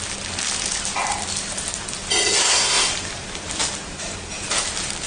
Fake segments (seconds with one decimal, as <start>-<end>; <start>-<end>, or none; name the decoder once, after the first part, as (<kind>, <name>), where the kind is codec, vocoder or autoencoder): 2.4-2.9 (codec, SNAC)